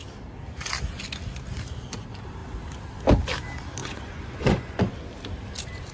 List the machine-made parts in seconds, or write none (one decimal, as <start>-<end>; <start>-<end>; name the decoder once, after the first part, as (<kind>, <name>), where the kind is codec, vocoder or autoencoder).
3.8-4.8 (vocoder, Vocos)